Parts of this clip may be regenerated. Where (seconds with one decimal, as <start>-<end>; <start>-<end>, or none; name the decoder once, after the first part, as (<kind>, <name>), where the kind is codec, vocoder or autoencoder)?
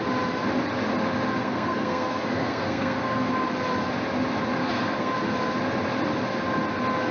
1.4-3.3 (codec, SNAC); 4.6-5.1